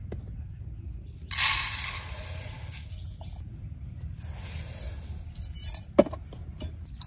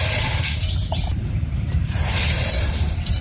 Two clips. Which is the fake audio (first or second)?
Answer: second